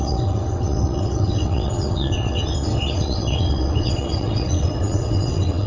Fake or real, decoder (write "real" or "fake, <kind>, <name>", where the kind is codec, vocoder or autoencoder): fake, vocoder, WaveNeXt